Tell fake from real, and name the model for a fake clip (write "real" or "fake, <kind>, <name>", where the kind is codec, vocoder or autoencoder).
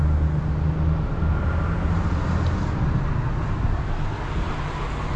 real